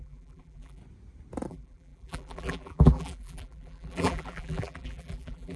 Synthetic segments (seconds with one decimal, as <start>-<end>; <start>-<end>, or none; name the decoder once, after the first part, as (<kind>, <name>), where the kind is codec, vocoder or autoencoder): 0.0-0.8 (vocoder, BigVGAN v2); 1.5-5.6